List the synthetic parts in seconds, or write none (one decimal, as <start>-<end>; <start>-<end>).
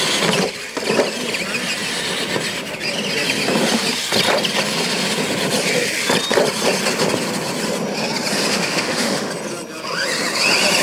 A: 8.5-9.3